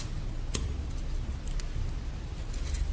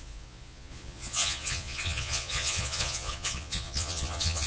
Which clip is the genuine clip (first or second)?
first